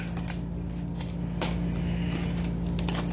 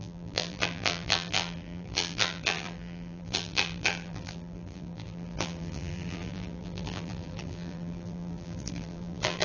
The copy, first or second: second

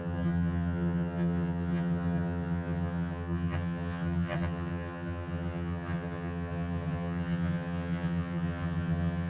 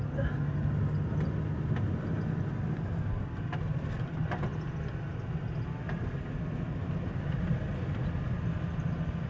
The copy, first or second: first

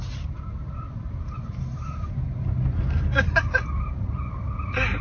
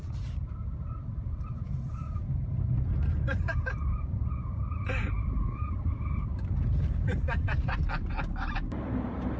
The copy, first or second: second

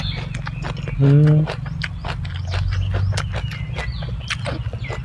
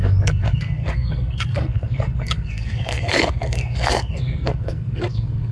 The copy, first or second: second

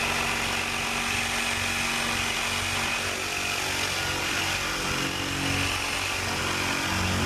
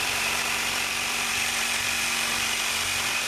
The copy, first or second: second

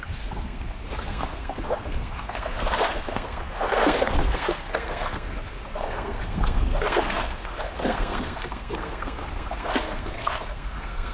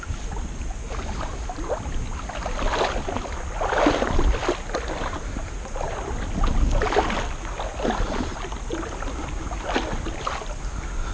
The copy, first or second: first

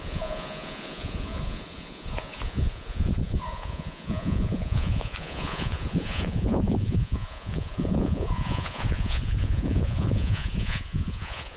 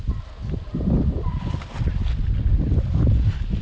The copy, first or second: first